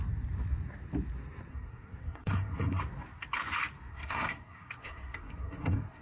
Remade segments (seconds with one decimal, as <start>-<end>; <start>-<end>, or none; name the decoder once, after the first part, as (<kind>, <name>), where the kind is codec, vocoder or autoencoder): 1.5-2.8 (codec, SNAC); 3.9-6.0